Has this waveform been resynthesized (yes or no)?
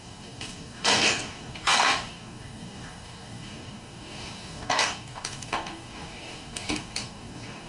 yes